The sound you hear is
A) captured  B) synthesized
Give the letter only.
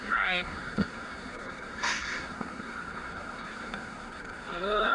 B